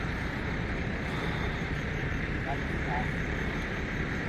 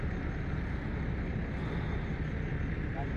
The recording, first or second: second